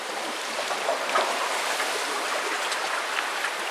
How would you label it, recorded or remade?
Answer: remade